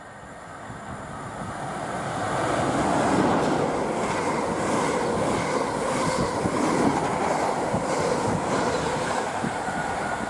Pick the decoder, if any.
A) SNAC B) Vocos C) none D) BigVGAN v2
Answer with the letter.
C